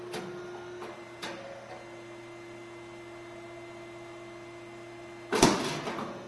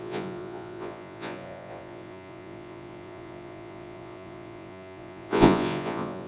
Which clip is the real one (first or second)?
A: first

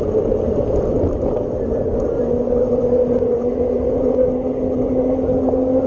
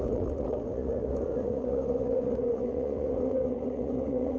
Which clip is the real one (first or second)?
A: first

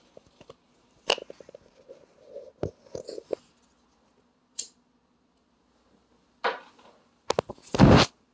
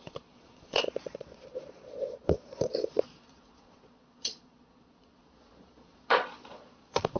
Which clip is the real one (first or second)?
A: first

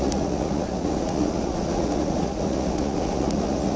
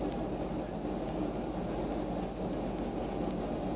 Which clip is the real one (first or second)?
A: second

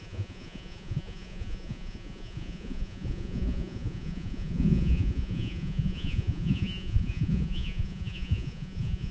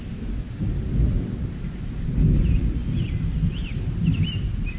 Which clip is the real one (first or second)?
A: second